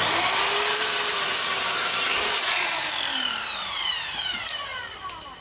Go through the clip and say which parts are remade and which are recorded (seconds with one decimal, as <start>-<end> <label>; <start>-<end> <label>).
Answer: 0.0-4.7 remade; 4.7-5.4 recorded